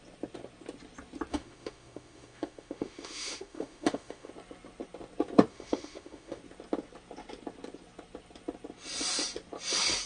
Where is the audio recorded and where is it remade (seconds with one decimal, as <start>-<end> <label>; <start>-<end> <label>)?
0.0-1.3 recorded; 1.3-4.3 remade; 4.3-5.5 recorded; 5.5-6.4 remade; 6.4-10.1 recorded